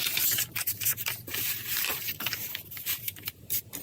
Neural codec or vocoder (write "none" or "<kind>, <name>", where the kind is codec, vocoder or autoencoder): vocoder, BigVGAN v2